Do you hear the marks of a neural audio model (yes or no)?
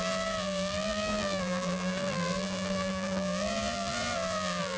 yes